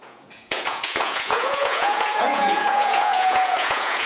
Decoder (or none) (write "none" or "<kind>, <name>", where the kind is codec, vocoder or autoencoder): vocoder, Vocos